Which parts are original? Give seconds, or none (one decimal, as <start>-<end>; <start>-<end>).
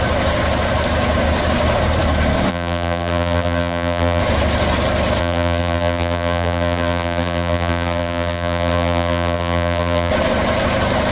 0.0-2.5; 4.2-5.2; 10.1-11.1